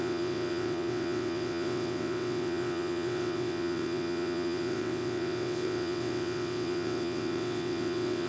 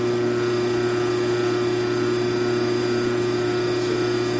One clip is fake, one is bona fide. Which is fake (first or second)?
first